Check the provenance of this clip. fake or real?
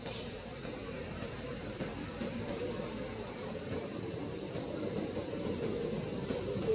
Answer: fake